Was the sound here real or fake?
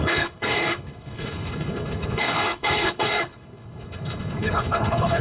fake